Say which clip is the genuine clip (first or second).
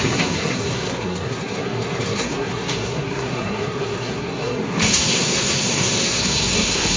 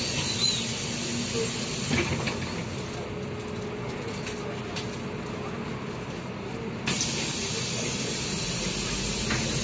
second